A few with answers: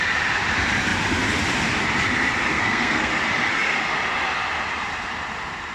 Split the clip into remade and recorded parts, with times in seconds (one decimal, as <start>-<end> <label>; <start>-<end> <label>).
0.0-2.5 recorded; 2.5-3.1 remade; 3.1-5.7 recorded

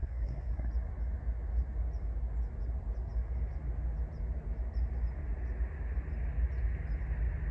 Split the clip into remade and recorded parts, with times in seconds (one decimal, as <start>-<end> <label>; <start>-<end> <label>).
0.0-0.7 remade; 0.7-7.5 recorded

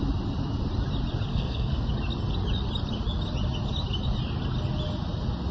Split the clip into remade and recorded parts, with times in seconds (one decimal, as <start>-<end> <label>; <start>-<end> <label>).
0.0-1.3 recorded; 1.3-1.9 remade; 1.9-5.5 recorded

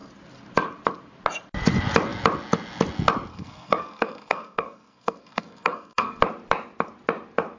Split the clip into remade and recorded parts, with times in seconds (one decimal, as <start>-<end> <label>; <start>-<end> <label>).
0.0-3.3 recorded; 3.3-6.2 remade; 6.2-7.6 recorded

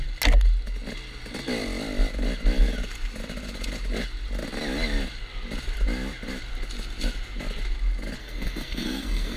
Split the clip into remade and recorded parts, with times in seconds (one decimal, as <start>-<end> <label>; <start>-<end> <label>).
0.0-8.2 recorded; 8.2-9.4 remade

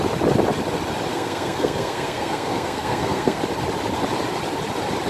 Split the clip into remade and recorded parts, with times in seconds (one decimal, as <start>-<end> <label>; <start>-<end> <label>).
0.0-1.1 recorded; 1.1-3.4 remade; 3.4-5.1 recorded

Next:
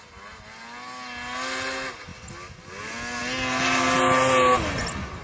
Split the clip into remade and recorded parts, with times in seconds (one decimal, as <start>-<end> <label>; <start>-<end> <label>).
0.0-5.2 recorded